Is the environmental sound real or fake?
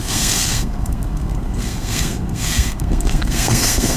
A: fake